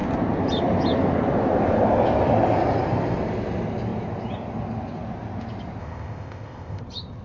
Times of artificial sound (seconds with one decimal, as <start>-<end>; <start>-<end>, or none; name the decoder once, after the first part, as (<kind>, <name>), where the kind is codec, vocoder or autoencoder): 5.8-6.8 (codec, ZipCodec)